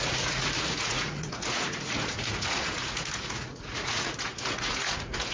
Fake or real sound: fake